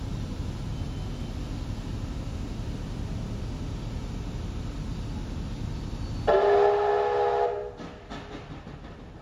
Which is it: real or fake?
real